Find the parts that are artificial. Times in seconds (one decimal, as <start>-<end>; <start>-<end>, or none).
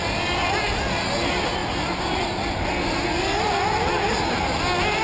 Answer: none